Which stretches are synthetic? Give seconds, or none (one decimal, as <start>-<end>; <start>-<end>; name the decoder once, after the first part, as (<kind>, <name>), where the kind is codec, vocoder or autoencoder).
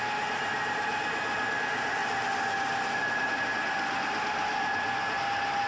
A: none